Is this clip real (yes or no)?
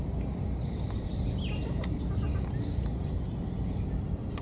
yes